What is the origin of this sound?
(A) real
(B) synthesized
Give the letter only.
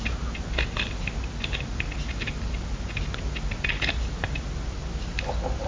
A